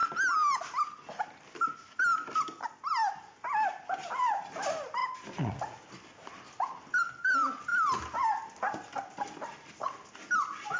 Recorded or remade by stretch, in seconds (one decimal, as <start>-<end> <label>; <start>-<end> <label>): 0.0-10.8 recorded

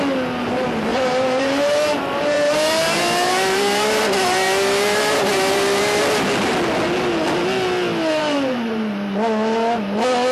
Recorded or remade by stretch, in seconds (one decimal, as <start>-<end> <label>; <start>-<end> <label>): 0.0-0.9 recorded; 0.9-6.0 remade; 6.0-8.1 recorded; 8.1-8.8 remade; 8.8-10.3 recorded

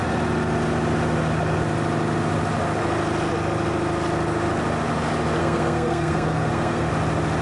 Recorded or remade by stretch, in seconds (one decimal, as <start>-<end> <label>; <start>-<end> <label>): 0.0-5.4 recorded; 5.4-6.9 remade; 6.9-7.4 recorded